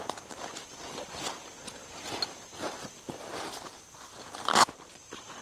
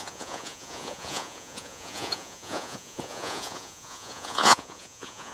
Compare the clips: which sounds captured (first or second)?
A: first